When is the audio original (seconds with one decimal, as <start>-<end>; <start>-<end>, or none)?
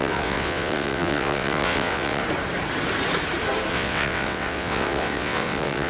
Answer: 2.2-3.7